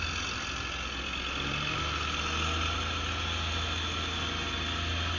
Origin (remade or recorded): recorded